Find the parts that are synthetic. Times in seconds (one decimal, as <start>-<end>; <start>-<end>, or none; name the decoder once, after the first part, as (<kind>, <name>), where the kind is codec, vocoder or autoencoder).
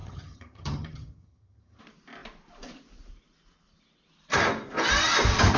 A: 0.0-1.8 (vocoder, HiFi-GAN)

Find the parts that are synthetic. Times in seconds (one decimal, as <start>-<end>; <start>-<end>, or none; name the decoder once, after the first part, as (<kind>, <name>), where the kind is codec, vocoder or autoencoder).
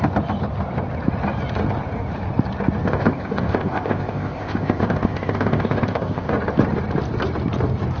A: 2.8-6.3 (codec, ZipCodec)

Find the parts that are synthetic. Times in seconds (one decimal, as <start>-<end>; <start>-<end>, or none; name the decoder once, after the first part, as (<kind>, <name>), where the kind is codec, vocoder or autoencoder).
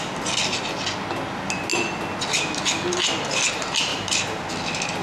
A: 3.9-4.5 (vocoder, BigVGAN v2)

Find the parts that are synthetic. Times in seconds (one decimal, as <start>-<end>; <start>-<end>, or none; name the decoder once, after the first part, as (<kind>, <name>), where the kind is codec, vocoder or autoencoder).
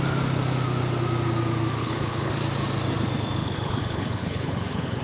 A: 1.8-2.3 (codec, HILCodec); 3.4-5.0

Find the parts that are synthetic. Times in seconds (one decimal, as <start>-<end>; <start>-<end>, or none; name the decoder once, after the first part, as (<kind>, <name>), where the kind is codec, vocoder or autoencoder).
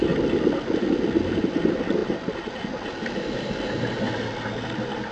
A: none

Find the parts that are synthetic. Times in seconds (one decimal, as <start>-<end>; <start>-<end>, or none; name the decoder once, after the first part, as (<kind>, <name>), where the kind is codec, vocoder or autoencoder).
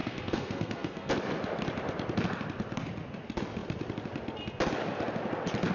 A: 0.0-1.1 (codec, SNAC)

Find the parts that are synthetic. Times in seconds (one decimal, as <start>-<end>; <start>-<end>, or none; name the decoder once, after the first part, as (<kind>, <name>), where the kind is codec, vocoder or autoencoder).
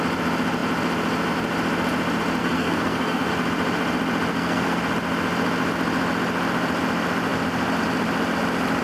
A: 2.4-3.3 (codec, SNAC); 4.3-4.8